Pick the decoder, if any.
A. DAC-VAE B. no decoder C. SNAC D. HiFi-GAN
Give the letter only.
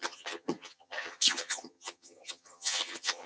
D